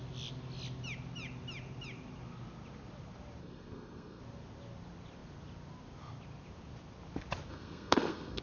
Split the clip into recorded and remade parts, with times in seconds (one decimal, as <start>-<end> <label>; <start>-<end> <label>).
0.0-3.4 recorded; 3.4-4.2 remade; 4.2-7.5 recorded; 7.5-8.4 remade